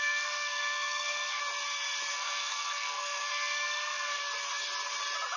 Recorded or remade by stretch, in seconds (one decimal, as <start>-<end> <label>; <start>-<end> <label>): 0.0-1.4 remade; 1.4-2.1 recorded; 2.1-4.2 remade; 4.2-5.4 recorded